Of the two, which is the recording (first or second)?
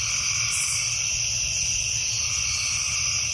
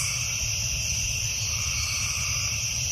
first